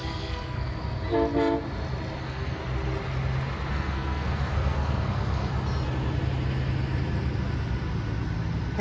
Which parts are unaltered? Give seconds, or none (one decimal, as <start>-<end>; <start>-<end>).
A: 0.8-2.2; 2.6-3.7; 5.5-8.8